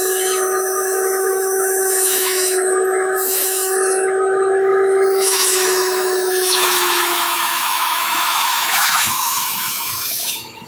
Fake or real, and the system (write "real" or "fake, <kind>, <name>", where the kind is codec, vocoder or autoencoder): fake, autoencoder, DAC-VAE